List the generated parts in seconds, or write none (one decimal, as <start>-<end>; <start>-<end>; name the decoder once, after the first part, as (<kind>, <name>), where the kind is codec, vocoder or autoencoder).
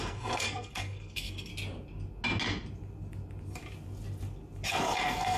0.0-1.5 (codec, SNAC); 4.7-5.4